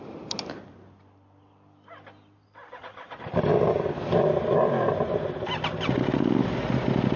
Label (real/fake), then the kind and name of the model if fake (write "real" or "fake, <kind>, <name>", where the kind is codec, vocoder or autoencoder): real